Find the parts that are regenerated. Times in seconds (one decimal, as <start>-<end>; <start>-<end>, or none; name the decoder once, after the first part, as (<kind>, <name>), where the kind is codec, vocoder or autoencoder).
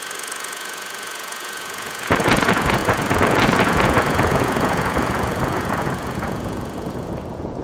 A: 0.0-7.6 (vocoder, Vocos)